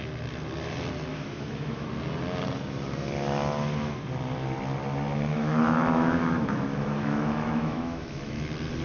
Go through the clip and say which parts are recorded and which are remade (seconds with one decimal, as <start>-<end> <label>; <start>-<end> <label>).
0.0-1.1 recorded; 1.1-1.9 remade; 1.9-5.3 recorded; 5.3-8.4 remade; 8.4-8.8 recorded